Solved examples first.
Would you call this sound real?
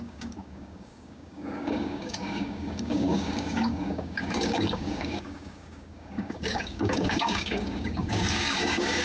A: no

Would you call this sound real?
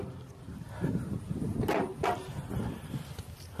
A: yes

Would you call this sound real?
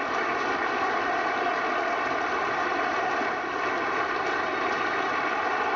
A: yes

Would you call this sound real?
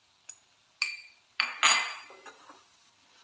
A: yes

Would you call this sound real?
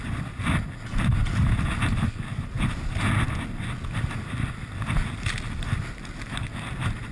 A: yes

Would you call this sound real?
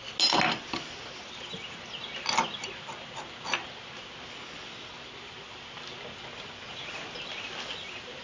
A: yes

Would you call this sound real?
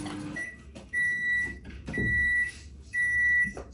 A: no